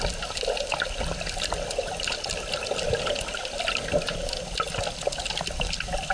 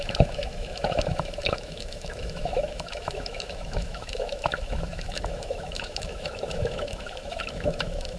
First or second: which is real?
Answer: first